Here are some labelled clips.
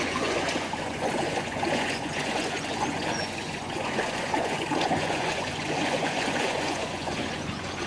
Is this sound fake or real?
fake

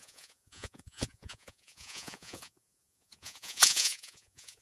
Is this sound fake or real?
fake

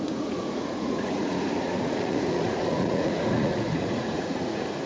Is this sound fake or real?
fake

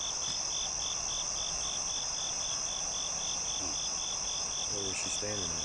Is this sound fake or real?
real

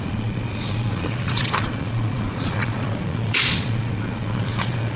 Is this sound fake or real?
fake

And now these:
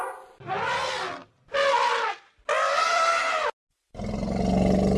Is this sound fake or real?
real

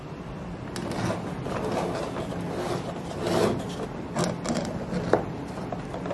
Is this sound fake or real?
real